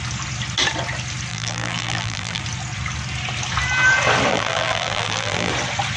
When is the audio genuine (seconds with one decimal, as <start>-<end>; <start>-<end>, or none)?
0.0-1.3; 2.4-4.3; 5.5-6.0